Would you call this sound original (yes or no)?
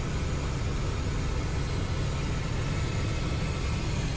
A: yes